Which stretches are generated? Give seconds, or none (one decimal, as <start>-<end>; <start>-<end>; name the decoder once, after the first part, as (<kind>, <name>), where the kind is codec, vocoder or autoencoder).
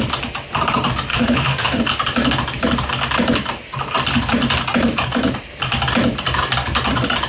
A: 1.1-1.8 (autoencoder, DAC-VAE)